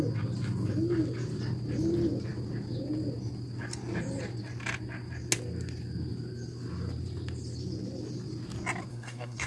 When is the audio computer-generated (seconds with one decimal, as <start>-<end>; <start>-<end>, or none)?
8.9-9.5